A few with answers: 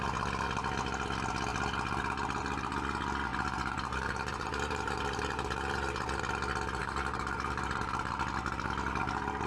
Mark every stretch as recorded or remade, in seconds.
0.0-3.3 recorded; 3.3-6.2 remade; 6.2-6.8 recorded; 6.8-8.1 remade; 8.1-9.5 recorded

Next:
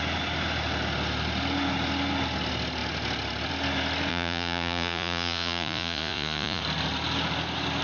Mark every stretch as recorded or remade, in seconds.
0.0-4.1 recorded; 4.1-6.6 remade; 6.6-7.8 recorded

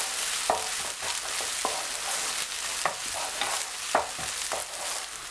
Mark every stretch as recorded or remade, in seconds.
0.0-5.3 recorded

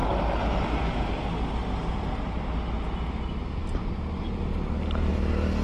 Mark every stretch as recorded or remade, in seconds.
0.0-5.6 recorded

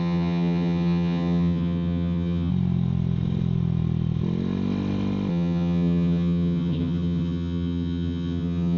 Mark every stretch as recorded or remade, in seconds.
0.0-2.5 remade; 2.5-5.3 recorded; 5.3-8.8 remade

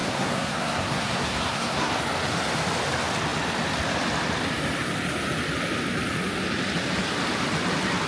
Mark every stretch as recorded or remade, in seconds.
0.0-1.9 remade; 1.9-8.1 recorded